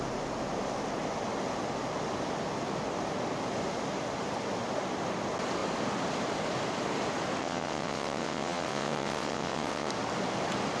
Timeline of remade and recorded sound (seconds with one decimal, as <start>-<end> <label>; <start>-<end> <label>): 0.0-7.4 recorded; 7.4-9.9 remade; 9.9-10.8 recorded

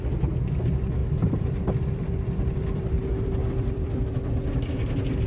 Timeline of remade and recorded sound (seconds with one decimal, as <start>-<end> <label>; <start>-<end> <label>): 0.0-1.0 recorded; 1.0-3.0 remade; 3.0-3.4 recorded; 3.4-4.1 remade; 4.1-5.3 recorded